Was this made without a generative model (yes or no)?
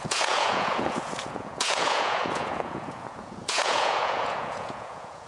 no